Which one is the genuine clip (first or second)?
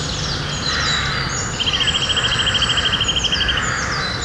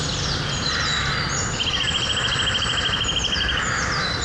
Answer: first